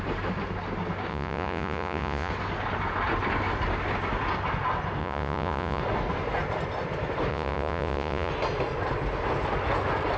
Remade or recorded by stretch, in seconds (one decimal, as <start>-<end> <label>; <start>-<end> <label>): 0.0-1.1 recorded; 1.1-2.3 remade; 2.3-5.0 recorded; 5.0-5.8 remade; 5.8-7.3 recorded; 7.3-8.3 remade; 8.3-10.2 recorded